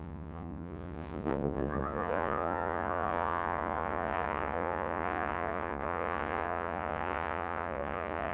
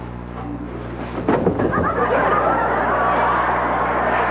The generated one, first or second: first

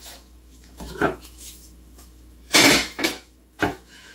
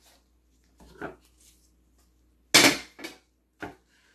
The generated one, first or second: first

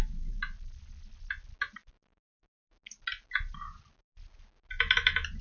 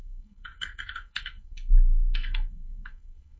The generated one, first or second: second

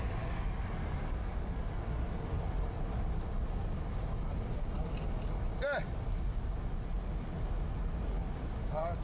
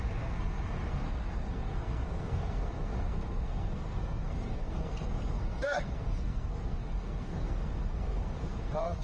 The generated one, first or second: second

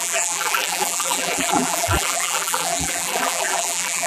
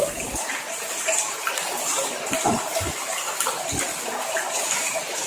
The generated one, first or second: first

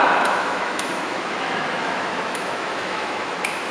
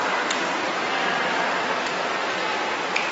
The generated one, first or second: first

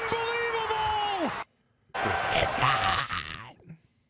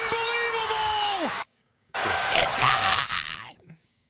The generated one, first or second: second